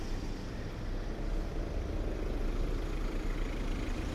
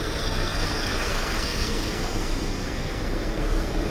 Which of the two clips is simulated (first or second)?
second